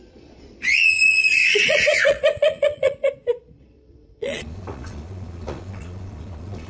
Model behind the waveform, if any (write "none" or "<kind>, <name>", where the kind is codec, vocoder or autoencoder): vocoder, Vocos